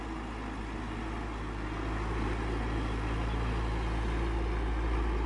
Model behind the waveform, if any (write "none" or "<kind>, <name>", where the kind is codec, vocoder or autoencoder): none